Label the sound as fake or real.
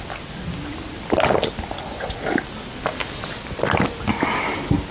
real